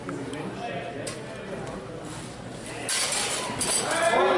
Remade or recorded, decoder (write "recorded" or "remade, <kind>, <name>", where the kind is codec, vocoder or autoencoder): recorded